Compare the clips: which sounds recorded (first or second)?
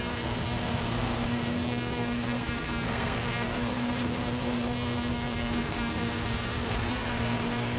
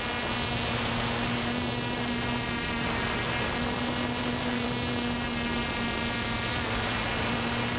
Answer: second